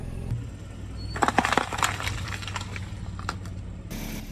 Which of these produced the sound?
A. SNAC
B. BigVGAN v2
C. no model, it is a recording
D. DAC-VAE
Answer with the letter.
C